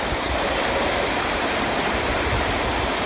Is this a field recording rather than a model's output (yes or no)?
no